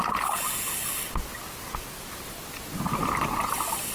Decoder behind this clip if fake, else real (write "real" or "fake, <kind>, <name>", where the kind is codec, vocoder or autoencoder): real